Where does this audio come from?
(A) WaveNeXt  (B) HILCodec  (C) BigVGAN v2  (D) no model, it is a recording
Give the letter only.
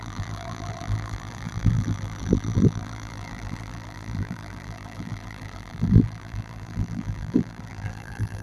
C